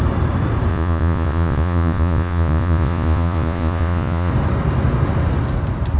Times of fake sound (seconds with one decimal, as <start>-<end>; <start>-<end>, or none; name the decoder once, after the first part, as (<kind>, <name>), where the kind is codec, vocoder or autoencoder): 0.7-4.3 (vocoder, Vocos)